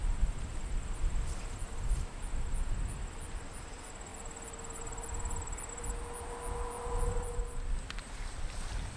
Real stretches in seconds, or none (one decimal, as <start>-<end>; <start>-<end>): 0.0-9.0